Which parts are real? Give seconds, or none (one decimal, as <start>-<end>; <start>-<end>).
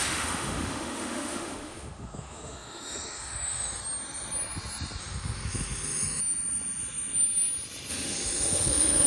3.8-5.0; 6.2-7.9